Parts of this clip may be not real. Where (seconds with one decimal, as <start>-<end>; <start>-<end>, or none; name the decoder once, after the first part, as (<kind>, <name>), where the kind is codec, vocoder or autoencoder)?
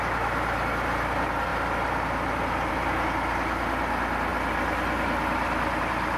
none